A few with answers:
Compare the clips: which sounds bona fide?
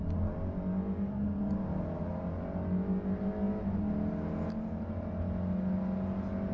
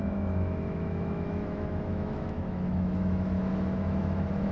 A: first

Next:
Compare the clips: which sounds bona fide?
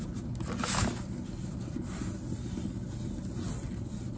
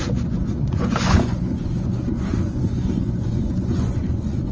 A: first